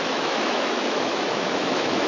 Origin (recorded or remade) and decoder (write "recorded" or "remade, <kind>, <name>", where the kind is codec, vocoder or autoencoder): remade, autoencoder, DAC-VAE